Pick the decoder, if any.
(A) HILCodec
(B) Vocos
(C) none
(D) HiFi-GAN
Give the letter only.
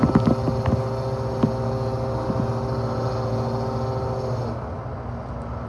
C